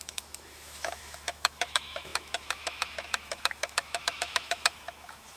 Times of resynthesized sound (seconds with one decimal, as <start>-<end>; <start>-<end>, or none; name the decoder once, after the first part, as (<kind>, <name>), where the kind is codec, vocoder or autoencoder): 0.0-5.4 (autoencoder, DAC-VAE)

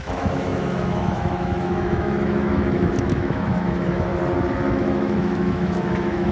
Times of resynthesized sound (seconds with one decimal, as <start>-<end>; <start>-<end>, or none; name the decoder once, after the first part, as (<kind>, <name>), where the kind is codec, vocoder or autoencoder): 0.0-4.1 (autoencoder, DAC-VAE); 4.7-6.3

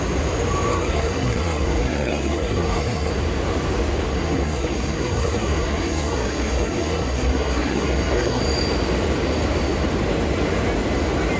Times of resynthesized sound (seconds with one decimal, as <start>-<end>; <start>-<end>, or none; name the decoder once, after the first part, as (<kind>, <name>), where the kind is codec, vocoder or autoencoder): 0.7-3.1 (codec, SNAC); 4.1-8.4

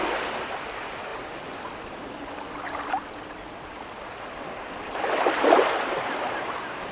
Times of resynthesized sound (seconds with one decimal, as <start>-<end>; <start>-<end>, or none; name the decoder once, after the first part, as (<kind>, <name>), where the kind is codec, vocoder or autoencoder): none

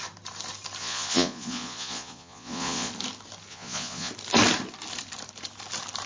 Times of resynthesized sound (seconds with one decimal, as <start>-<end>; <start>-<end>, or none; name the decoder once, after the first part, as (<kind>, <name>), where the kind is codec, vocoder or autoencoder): 0.8-2.9 (vocoder, Vocos); 3.5-4.1

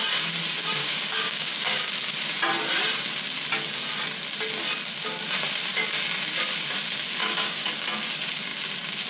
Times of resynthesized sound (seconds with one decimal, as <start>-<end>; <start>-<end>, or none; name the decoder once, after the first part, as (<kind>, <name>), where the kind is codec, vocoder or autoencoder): 0.8-1.9 (codec, DAC); 7.2-7.7